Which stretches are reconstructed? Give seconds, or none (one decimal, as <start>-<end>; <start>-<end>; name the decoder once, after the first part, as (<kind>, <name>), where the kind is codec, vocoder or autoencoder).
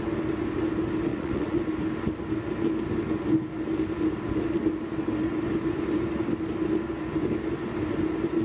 1.1-1.6 (vocoder, Vocos)